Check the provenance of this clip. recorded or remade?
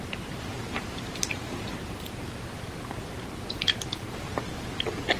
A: remade